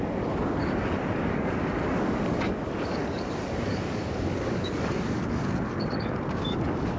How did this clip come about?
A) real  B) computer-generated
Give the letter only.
B